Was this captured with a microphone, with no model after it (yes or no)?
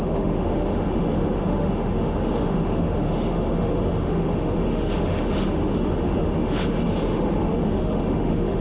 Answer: no